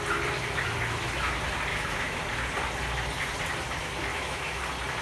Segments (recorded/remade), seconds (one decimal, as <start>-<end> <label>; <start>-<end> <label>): 0.0-1.7 recorded; 1.7-2.2 remade; 2.2-4.1 recorded; 4.1-4.6 remade; 4.6-5.0 recorded